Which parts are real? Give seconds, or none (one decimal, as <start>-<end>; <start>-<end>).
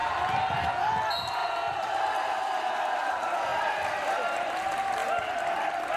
0.0-1.4; 2.4-3.5; 4.1-5.0